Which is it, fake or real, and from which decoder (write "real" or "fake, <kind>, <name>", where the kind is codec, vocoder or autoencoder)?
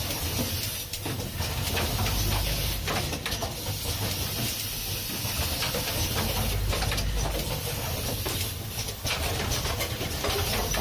real